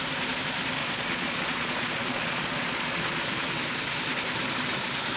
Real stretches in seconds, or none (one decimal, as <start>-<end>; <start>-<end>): 0.0-0.8; 3.2-5.2